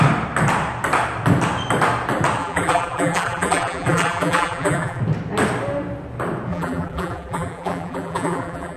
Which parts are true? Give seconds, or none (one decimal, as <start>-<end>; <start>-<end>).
0.0-2.4; 5.0-6.5